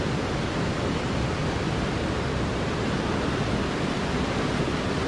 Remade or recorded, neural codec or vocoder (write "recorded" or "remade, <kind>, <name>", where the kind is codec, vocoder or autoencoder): recorded